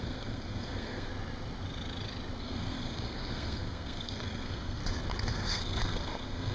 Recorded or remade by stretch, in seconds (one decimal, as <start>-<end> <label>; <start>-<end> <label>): 0.0-1.1 remade; 1.1-2.4 recorded; 2.4-4.8 remade; 4.8-5.3 recorded; 5.3-6.5 remade